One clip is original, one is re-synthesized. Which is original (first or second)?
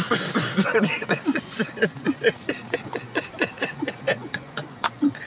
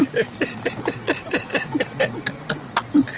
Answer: second